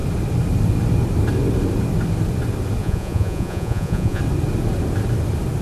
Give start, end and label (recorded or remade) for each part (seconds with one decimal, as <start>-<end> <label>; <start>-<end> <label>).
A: 0.0-2.8 recorded; 2.8-4.2 remade; 4.2-5.6 recorded